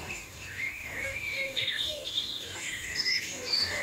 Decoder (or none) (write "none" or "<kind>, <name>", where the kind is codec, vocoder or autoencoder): codec, DAC